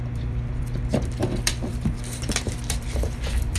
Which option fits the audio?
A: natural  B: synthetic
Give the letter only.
B